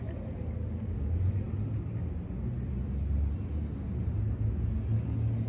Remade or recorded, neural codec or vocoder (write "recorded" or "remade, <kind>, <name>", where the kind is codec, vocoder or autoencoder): recorded